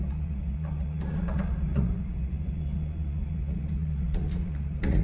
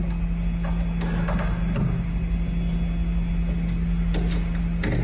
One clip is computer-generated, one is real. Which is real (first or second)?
second